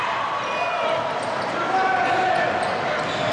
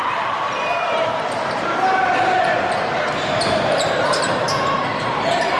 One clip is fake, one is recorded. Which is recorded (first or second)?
first